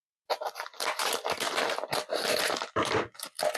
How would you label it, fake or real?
real